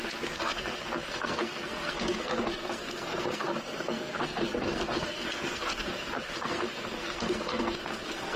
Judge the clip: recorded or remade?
remade